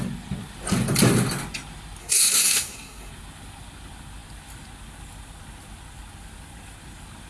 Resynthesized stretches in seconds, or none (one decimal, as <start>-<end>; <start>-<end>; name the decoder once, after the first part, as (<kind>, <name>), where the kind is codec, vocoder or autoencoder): 2.0-3.1 (codec, SNAC)